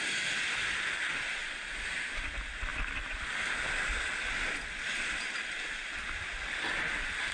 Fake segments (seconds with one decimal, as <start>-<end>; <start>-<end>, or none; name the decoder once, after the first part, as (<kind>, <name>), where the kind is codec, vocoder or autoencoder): none